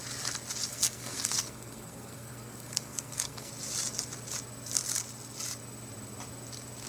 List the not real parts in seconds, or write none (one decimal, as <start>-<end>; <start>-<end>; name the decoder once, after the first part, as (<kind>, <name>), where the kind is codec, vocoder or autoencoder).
0.7-3.5 (codec, SNAC)